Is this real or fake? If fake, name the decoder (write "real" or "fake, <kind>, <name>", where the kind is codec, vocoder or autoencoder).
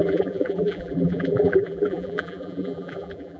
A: fake, vocoder, BigVGAN v2